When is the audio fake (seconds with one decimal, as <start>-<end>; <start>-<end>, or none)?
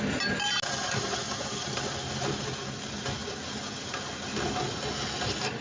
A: none